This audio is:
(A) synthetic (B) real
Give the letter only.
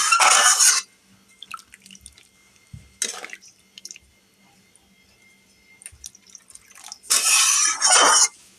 B